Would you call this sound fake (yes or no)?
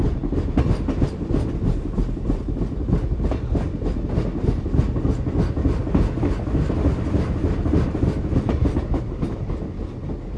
no